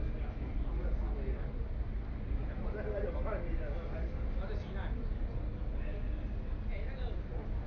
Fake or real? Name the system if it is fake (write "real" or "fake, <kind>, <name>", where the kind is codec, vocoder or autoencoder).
real